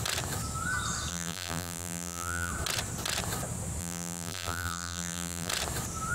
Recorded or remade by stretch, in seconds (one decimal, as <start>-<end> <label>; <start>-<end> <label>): 0.0-1.1 recorded; 1.1-2.5 remade; 2.5-3.8 recorded; 3.8-5.5 remade; 5.5-6.1 recorded